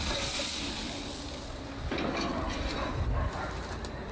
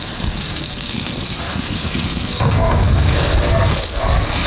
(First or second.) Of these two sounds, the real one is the first